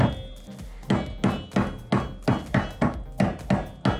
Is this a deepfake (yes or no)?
no